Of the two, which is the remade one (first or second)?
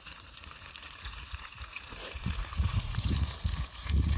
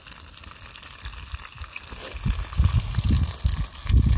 first